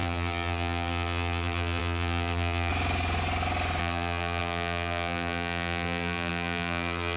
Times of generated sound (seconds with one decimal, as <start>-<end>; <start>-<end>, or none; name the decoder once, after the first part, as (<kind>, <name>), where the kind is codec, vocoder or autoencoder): 0.0-2.7 (vocoder, BigVGAN v2); 3.8-7.2